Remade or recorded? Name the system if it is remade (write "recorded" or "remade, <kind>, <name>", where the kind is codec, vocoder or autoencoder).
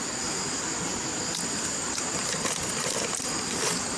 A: recorded